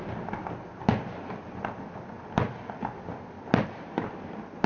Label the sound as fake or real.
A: real